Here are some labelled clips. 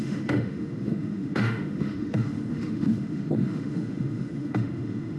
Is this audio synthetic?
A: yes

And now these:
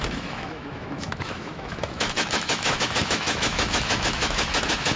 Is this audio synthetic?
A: yes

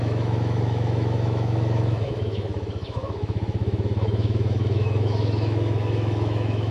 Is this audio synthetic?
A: yes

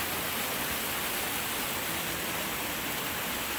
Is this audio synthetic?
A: no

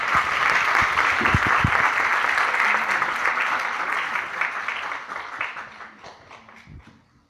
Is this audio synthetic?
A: no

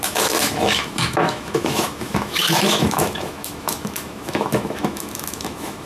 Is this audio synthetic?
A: yes